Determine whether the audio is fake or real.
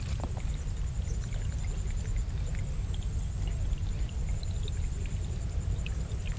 real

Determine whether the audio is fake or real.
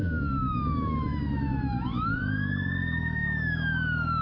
fake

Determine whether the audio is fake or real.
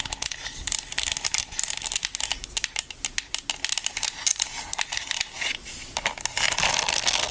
real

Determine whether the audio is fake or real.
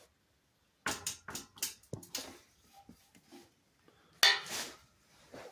real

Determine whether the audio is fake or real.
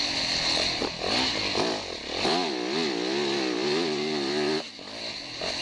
real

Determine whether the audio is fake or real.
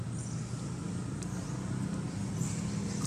real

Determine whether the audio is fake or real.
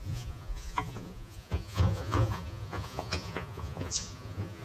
fake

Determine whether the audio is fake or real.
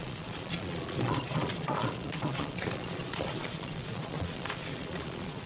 fake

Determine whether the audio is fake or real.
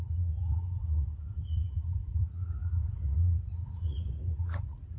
fake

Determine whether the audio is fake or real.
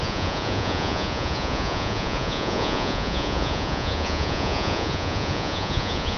fake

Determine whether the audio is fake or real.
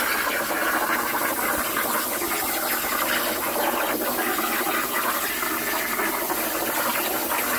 real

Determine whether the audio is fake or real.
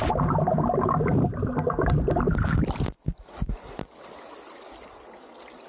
real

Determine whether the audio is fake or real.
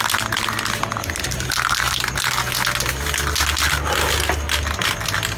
real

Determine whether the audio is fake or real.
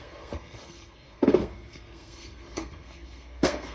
fake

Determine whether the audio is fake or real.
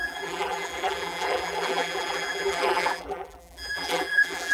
fake